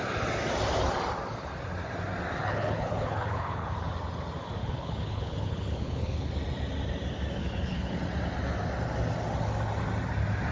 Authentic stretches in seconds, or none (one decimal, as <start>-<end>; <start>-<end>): 0.0-2.4; 3.9-4.6; 6.3-7.4; 8.0-10.5